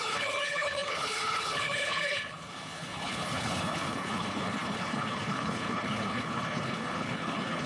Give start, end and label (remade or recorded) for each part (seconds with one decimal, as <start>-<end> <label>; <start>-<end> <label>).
0.0-7.7 remade